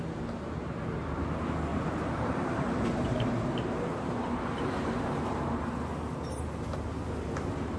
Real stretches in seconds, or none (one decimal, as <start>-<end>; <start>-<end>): 0.0-1.7; 6.4-7.8